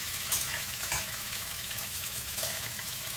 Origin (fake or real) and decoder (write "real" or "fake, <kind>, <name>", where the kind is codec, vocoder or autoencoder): fake, autoencoder, DAC-VAE